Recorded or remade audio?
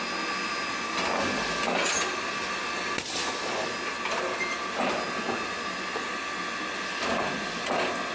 recorded